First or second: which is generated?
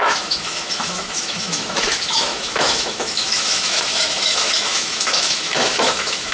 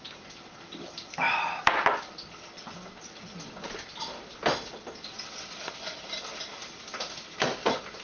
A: first